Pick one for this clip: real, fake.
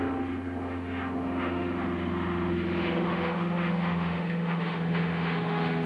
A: fake